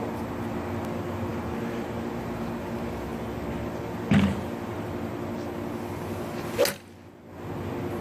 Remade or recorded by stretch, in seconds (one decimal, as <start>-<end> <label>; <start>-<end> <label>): 0.0-8.0 recorded